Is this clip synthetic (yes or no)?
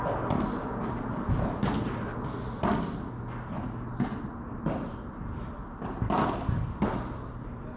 no